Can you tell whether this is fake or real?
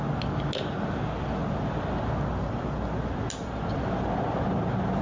real